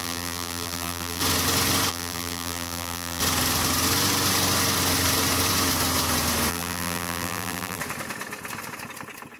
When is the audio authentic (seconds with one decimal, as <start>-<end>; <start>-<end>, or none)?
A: 1.2-1.9; 3.2-6.5; 7.8-9.4